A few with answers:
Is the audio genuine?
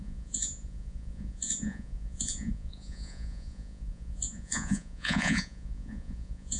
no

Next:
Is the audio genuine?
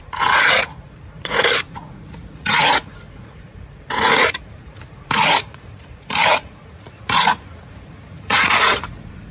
no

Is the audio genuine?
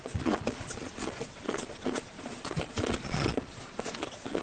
no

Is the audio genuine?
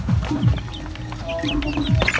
yes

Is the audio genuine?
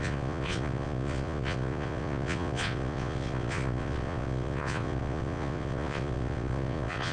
no